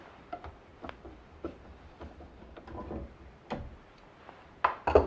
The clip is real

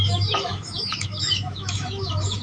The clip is fake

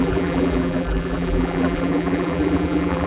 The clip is fake